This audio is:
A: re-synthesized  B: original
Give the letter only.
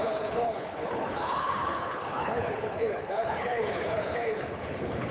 A